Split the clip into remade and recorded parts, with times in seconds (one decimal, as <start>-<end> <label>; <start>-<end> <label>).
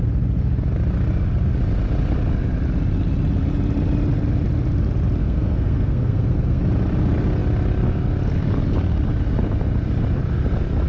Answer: 0.0-5.2 recorded; 5.2-6.6 remade; 6.6-10.9 recorded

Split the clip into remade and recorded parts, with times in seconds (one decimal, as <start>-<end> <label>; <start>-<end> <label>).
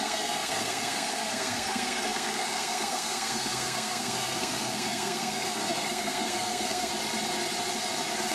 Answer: 0.0-6.9 remade; 6.9-8.3 recorded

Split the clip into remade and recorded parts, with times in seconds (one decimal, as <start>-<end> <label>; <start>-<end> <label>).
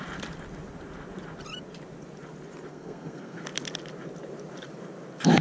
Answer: 0.0-2.7 recorded; 2.7-3.4 remade; 3.4-5.4 recorded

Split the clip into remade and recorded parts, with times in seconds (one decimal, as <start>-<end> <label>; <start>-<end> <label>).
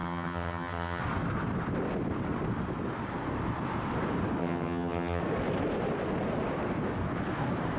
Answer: 0.0-1.0 remade; 1.0-4.4 recorded; 4.4-5.2 remade; 5.2-7.8 recorded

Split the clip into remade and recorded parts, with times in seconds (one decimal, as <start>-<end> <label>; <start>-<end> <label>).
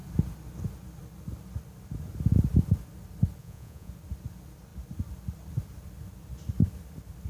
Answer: 0.0-3.4 recorded; 3.4-3.9 remade; 3.9-7.3 recorded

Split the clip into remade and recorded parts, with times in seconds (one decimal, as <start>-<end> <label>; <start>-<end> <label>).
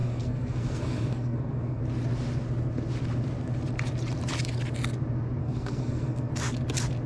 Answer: 0.0-1.8 remade; 1.8-5.4 recorded; 5.4-6.3 remade; 6.3-7.1 recorded